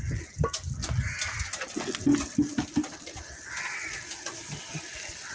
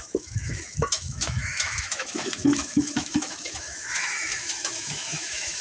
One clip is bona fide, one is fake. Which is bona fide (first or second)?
first